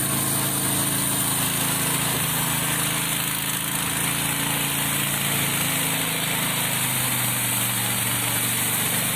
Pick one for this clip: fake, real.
real